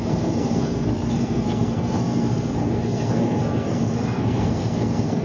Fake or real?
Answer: fake